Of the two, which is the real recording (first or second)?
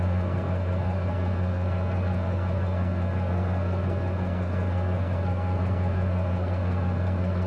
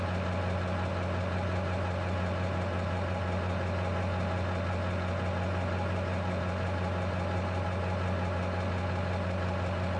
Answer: second